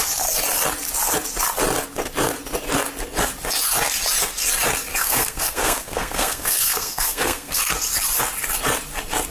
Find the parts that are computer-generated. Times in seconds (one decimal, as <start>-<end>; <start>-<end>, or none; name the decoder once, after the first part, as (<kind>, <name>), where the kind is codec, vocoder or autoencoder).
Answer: 4.9-7.6 (codec, SNAC)